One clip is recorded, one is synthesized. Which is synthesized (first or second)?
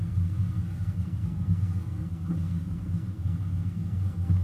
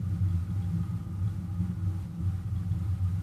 first